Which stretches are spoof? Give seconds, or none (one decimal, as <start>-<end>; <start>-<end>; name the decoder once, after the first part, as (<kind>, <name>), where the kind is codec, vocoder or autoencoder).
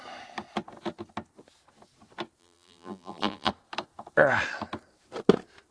2.4-3.5 (vocoder, BigVGAN v2)